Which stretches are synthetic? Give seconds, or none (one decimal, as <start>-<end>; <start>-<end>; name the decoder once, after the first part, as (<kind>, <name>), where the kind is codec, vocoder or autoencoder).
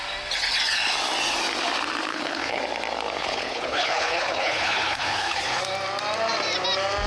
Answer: 2.1-2.6 (codec, HILCodec); 3.2-5.6